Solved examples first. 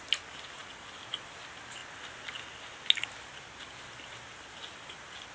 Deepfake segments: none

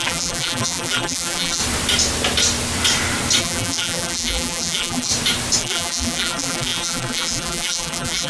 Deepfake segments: 0.0-1.6; 3.4-5.1; 5.6-8.3